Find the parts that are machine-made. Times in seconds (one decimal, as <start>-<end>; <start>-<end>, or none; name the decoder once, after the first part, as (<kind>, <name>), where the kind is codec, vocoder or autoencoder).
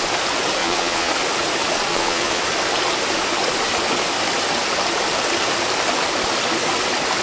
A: 0.6-1.1 (vocoder, Vocos); 1.9-2.4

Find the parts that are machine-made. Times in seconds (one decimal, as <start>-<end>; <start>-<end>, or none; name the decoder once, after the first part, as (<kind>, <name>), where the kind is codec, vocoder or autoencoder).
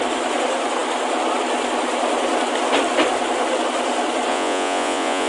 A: 4.3-5.3 (vocoder, Vocos)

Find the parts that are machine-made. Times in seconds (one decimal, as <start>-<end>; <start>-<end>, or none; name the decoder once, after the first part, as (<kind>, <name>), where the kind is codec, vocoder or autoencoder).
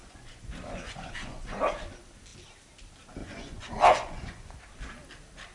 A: 0.0-1.6 (vocoder, Vocos); 3.2-4.6